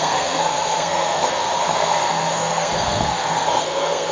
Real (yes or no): no